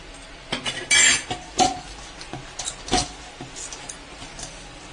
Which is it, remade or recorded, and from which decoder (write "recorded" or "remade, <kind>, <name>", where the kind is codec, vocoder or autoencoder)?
recorded